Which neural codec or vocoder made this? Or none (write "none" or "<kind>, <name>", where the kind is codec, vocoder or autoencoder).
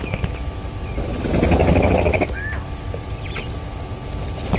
vocoder, BigVGAN v2